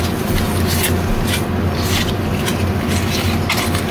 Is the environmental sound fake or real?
real